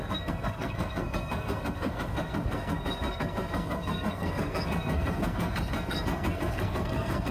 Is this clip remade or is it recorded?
remade